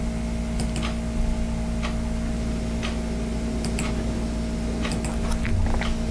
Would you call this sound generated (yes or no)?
no